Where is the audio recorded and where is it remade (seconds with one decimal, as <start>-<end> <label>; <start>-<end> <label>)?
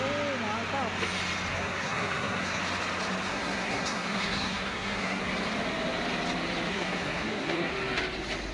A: 0.0-1.5 recorded; 1.5-2.6 remade; 2.6-3.3 recorded; 3.3-5.2 remade; 5.2-6.7 recorded; 6.7-7.7 remade; 7.7-8.5 recorded